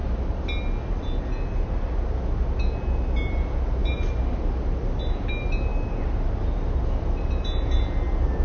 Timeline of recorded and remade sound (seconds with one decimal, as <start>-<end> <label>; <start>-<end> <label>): 0.0-8.4 recorded